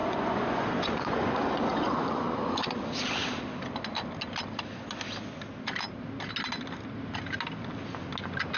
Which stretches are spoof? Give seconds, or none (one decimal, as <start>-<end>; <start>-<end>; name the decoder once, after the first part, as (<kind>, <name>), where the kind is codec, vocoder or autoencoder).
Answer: 0.0-2.7 (vocoder, Vocos)